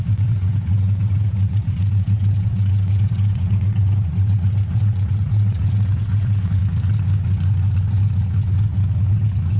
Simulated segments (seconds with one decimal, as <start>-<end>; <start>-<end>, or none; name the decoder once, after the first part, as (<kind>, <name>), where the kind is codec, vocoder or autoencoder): 0.0-6.6 (vocoder, WaveNeXt)